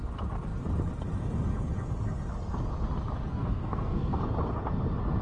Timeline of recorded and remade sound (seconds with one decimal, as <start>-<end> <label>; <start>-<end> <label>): 0.0-3.3 recorded; 3.3-4.2 remade; 4.2-5.2 recorded